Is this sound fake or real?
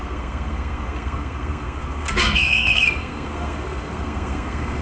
fake